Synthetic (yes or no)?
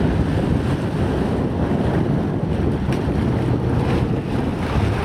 no